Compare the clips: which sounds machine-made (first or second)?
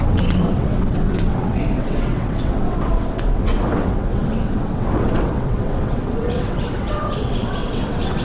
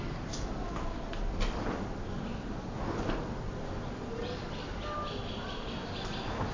first